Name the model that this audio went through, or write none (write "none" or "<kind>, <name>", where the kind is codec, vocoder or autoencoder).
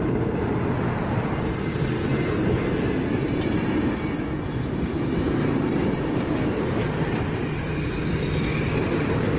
none